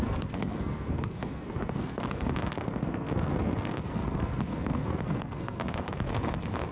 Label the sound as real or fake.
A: fake